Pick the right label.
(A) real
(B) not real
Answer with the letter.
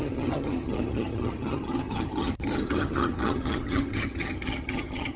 B